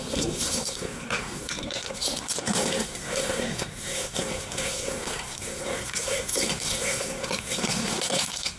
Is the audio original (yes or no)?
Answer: no